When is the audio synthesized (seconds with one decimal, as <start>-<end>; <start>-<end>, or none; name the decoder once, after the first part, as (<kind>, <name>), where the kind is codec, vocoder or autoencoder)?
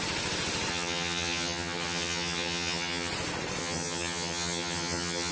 0.7-3.1 (vocoder, HiFi-GAN); 3.6-5.3